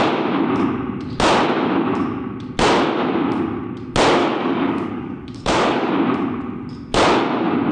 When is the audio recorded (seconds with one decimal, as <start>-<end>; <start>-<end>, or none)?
0.0-4.2; 5.9-7.7